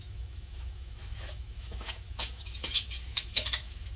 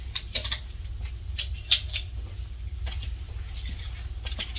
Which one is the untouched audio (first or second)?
second